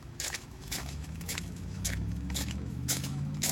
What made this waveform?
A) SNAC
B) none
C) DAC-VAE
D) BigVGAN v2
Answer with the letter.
C